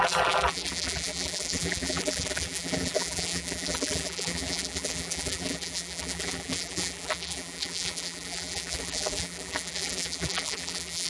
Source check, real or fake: fake